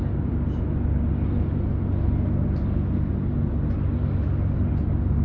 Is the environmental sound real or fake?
real